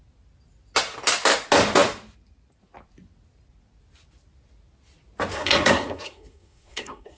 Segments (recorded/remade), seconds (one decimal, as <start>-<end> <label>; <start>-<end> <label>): 0.0-5.3 recorded; 5.3-7.2 remade